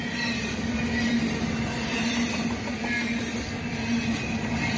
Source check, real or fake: real